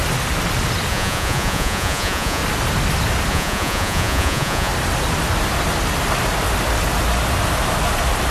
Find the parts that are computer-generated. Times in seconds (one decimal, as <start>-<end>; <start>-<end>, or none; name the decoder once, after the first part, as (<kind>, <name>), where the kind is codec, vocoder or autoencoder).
0.9-2.4 (vocoder, Vocos); 3.3-4.7